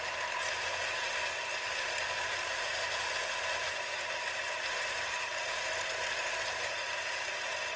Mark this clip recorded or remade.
recorded